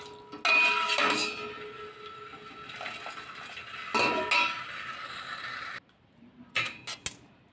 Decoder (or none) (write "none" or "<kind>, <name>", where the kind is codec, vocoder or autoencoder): none